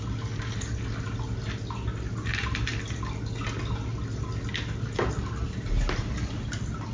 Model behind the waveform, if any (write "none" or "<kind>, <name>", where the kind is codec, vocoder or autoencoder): none